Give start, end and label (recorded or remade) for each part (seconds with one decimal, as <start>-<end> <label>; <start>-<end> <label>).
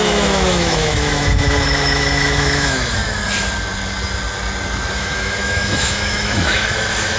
0.0-3.0 remade; 3.0-4.9 recorded; 4.9-7.2 remade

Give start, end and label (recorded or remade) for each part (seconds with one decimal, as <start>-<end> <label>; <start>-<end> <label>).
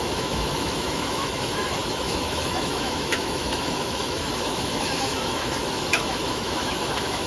0.0-7.3 remade